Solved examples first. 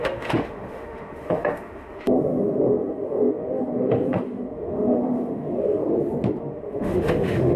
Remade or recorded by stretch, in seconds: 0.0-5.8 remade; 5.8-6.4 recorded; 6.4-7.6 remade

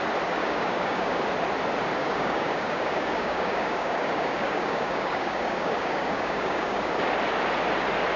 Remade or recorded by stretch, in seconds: 0.0-0.4 recorded; 0.4-1.2 remade; 1.2-2.0 recorded; 2.0-6.9 remade; 6.9-8.2 recorded

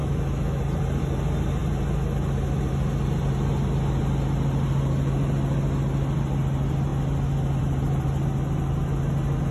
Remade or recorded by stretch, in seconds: 0.0-0.6 remade; 0.6-9.5 recorded

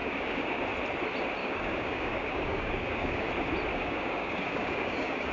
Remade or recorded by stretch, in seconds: 0.0-0.6 remade; 0.6-1.4 recorded; 1.4-3.3 remade; 3.3-3.7 recorded; 3.7-5.3 remade

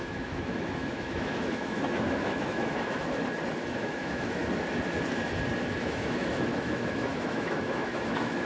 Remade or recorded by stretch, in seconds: 0.0-3.2 remade; 3.2-3.8 recorded; 3.8-4.4 remade; 4.4-5.8 recorded; 5.8-8.5 remade

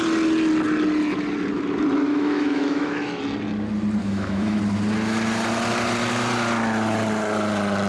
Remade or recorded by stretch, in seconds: 0.0-2.1 recorded; 2.1-3.2 remade; 3.2-4.0 recorded; 4.0-4.6 remade; 4.6-7.9 recorded

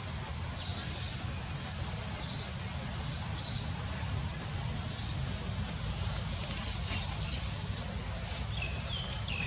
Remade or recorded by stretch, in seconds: 0.0-0.7 recorded; 0.7-1.8 remade; 1.8-3.1 recorded; 3.1-4.3 remade; 4.3-9.5 recorded